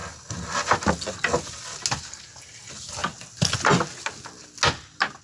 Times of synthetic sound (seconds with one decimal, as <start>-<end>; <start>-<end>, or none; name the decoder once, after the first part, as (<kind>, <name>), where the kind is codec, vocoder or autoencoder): none